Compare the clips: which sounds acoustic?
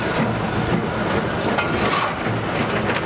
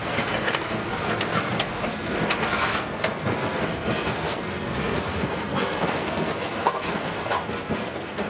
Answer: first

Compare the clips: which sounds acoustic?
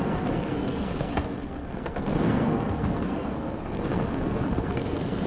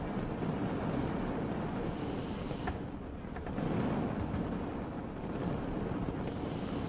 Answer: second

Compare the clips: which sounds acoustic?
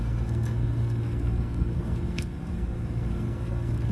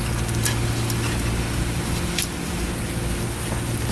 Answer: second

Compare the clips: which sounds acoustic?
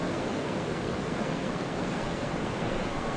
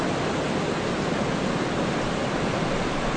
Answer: second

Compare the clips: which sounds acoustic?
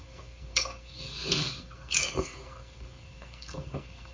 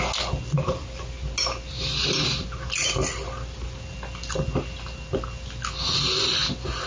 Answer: second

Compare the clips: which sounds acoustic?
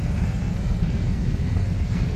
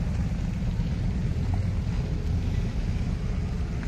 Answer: second